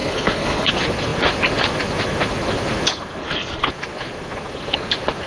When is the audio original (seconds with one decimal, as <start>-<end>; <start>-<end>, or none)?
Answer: 0.7-3.2; 3.7-5.3